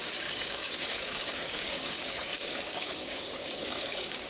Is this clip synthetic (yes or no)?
yes